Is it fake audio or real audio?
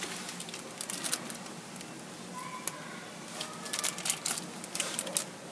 real